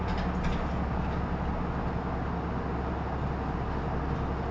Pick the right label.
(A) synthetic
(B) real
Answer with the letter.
B